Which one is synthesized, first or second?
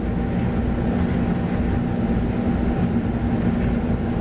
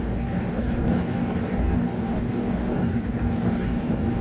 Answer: second